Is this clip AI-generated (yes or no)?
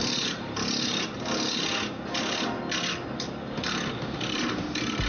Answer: no